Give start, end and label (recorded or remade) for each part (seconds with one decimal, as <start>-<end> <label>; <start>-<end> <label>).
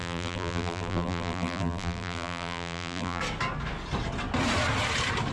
0.0-3.2 remade; 3.2-5.3 recorded